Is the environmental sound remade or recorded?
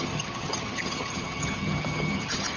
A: remade